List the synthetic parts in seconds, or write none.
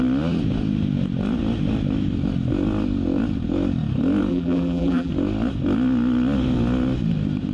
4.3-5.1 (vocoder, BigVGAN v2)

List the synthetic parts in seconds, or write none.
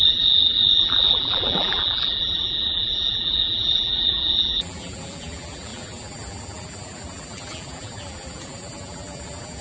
0.0-9.6 (vocoder, BigVGAN v2)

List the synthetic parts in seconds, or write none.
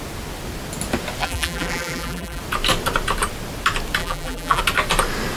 1.2-2.4 (vocoder, BigVGAN v2); 4.0-4.6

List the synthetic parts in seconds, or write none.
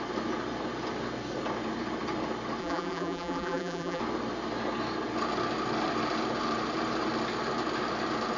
2.6-4.0 (vocoder, BigVGAN v2)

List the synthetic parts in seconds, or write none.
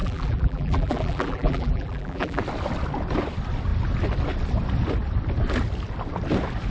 0.0-2.4 (vocoder, BigVGAN v2)